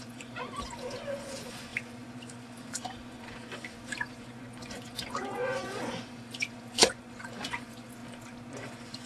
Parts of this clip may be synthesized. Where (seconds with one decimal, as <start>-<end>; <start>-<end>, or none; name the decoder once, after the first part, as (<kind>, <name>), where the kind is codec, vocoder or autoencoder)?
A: 0.0-8.0 (vocoder, Vocos); 8.6-9.1